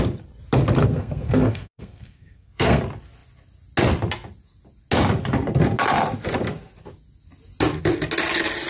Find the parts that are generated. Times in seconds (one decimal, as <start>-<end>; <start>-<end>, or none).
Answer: 0.8-2.8